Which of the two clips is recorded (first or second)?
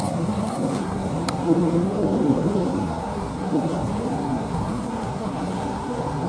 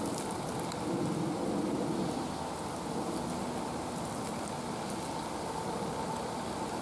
second